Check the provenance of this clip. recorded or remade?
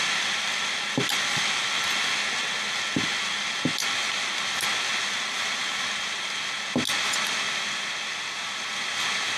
recorded